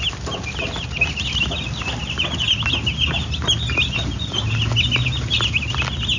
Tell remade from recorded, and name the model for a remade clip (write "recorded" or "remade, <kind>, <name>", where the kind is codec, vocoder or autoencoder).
recorded